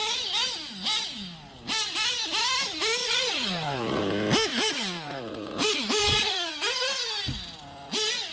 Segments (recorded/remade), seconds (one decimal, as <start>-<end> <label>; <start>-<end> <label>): 0.0-3.0 recorded; 3.0-4.0 remade; 4.0-4.5 recorded; 4.5-6.5 remade; 6.5-8.3 recorded

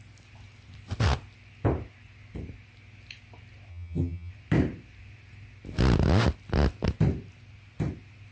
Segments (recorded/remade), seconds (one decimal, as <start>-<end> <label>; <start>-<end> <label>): 0.0-3.7 recorded; 3.7-4.3 remade; 4.3-8.3 recorded

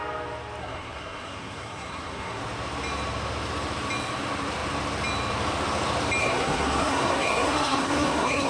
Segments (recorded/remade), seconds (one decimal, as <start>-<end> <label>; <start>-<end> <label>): 0.0-0.6 recorded; 0.6-2.4 remade; 2.4-6.2 recorded; 6.2-8.5 remade

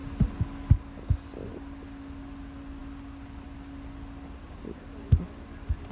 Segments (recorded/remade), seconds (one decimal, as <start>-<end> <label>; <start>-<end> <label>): 0.0-5.9 recorded

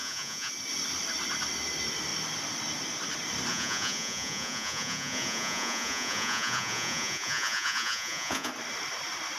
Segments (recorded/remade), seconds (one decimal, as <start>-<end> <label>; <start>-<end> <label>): 0.0-0.5 remade; 0.5-3.5 recorded; 3.5-8.5 remade; 8.5-9.4 recorded

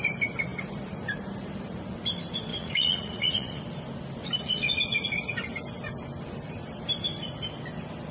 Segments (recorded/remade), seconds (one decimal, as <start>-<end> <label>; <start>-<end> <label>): 0.0-2.5 recorded; 2.5-3.6 remade; 3.6-8.1 recorded

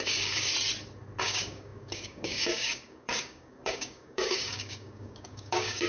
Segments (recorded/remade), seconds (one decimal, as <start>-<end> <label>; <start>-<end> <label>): 0.0-0.5 remade; 0.5-1.2 recorded; 1.2-5.9 remade

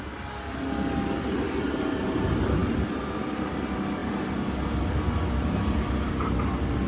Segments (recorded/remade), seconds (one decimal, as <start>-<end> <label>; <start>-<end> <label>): 0.0-6.9 recorded